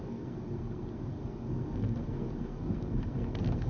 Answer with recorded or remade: remade